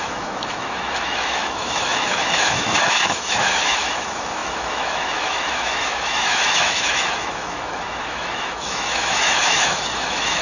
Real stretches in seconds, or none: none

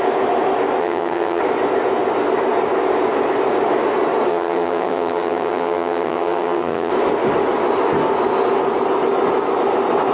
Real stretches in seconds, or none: 0.0-0.8; 1.4-4.3; 6.9-10.1